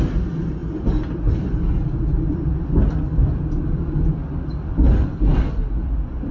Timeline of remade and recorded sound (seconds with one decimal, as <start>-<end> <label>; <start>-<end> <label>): 0.0-0.6 recorded; 0.6-2.8 remade; 2.8-3.2 recorded; 3.2-3.8 remade; 3.8-5.3 recorded; 5.3-6.3 remade